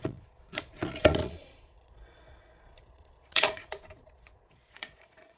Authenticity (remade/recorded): remade